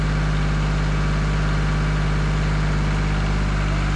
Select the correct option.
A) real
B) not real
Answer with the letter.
A